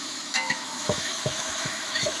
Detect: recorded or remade remade